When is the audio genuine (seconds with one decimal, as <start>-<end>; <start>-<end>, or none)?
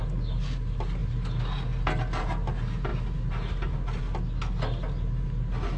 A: 0.0-5.8